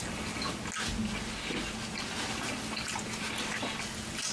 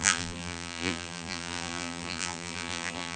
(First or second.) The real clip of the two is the first